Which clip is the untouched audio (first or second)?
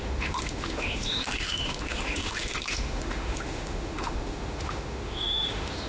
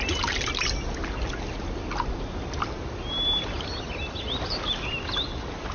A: second